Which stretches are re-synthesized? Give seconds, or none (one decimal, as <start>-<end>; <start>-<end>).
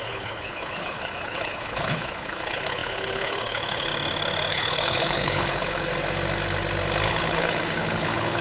0.0-3.9; 4.5-5.9; 7.1-8.4